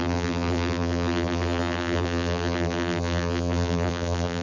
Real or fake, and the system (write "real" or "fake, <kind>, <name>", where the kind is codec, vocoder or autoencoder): fake, vocoder, BigVGAN v2